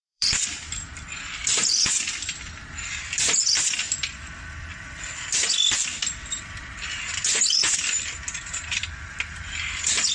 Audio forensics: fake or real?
fake